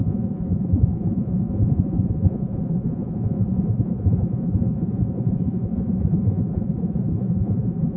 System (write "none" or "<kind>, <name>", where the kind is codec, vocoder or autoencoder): vocoder, Vocos